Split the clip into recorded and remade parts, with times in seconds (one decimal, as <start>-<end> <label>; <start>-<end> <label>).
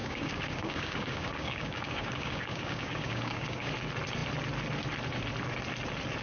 0.0-3.7 remade; 3.7-6.2 recorded